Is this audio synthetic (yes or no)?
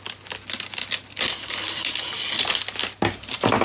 no